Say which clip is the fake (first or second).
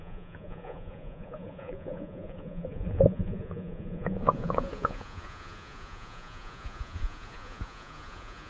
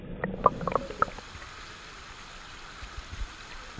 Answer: first